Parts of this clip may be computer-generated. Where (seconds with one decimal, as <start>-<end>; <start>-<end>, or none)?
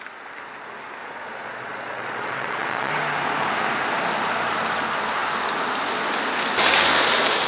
1.0-2.9